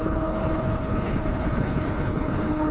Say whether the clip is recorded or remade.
remade